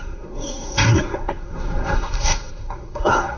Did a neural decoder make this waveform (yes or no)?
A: yes